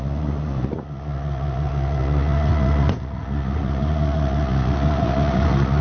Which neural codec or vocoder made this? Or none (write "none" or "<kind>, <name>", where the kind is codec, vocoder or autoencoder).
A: vocoder, Vocos